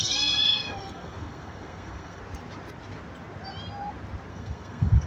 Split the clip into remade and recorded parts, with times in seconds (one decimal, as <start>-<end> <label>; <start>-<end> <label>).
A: 0.0-2.2 remade; 2.2-4.3 recorded; 4.3-5.1 remade